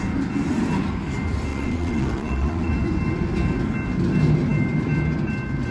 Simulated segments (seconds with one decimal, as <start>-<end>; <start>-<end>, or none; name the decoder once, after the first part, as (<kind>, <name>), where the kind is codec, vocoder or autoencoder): 1.5-2.7 (vocoder, Vocos)